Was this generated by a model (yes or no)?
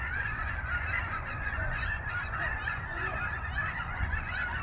yes